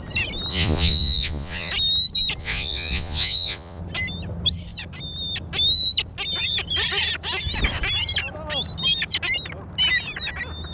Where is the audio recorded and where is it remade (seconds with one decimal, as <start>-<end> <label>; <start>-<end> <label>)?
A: 0.0-0.5 recorded; 0.5-1.7 remade; 1.7-2.4 recorded; 2.4-3.8 remade; 3.8-10.7 recorded